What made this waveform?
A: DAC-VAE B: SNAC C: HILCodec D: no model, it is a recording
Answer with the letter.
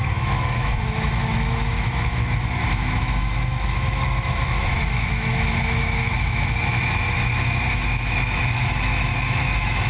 A